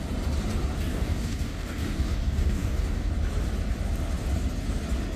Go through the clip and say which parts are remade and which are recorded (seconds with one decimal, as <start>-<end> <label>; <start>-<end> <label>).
0.0-0.9 recorded; 0.9-3.1 remade; 3.1-5.2 recorded